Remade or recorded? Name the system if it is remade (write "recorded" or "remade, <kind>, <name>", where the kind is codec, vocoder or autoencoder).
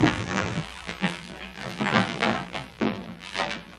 remade, vocoder, BigVGAN v2